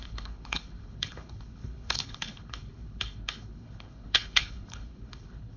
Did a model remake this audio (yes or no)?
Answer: yes